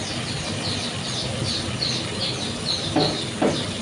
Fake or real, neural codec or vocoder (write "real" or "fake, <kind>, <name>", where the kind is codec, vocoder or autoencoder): real